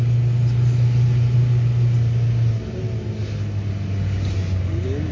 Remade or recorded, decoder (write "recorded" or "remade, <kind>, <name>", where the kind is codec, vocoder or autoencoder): recorded